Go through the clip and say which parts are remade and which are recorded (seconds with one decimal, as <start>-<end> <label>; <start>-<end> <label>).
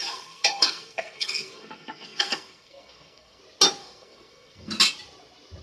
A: 0.0-3.4 remade; 3.4-3.8 recorded; 3.8-4.7 remade; 4.7-5.6 recorded